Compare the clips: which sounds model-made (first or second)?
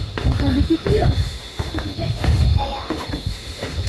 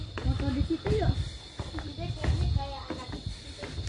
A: first